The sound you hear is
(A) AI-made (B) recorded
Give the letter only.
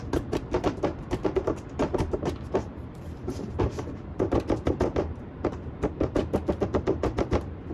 A